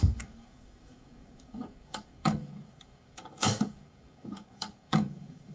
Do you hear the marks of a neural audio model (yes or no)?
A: yes